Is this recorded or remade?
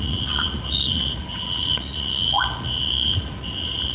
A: remade